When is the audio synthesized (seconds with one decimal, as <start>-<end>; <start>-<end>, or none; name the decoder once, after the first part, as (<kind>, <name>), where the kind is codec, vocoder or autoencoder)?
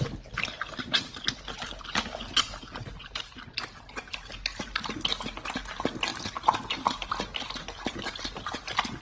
none